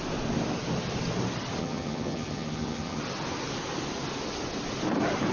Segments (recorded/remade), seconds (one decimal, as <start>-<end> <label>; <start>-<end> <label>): 0.0-1.6 recorded; 1.6-3.0 remade; 3.0-5.3 recorded